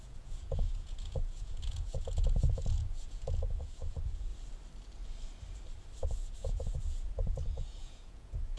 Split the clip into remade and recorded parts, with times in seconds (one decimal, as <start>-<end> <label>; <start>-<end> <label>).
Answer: 0.0-4.3 remade; 4.3-6.0 recorded; 6.0-8.6 remade